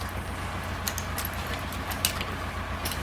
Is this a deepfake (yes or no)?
no